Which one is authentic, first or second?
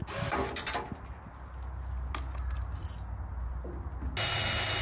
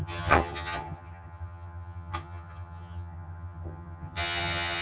first